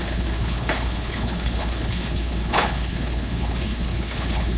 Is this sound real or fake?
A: fake